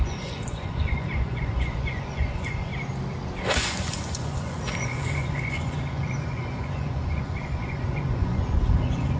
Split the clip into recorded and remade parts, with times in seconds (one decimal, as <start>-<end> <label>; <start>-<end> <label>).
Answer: 0.0-2.7 remade; 2.7-3.4 recorded; 3.4-9.2 remade